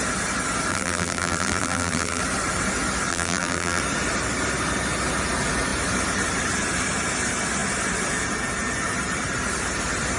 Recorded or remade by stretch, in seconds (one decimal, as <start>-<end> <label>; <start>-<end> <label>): 0.0-0.7 recorded; 0.7-2.2 remade; 2.2-3.1 recorded; 3.1-3.8 remade; 3.8-10.2 recorded